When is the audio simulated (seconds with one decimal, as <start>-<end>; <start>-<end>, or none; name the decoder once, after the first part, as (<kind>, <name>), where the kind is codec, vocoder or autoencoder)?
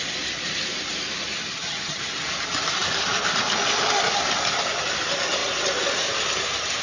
1.5-2.0 (vocoder, HiFi-GAN)